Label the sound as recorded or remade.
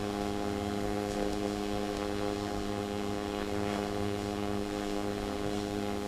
remade